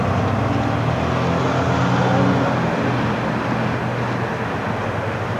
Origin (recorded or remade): recorded